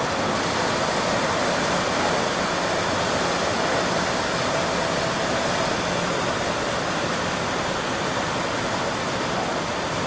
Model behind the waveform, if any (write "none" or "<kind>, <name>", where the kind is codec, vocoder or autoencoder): none